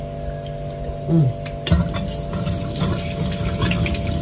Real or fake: real